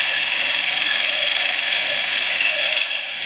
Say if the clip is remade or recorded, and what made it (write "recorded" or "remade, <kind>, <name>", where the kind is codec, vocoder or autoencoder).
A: remade, autoencoder, DAC-VAE